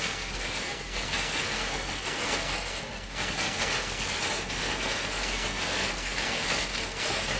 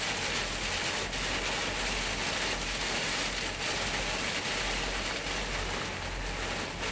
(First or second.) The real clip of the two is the second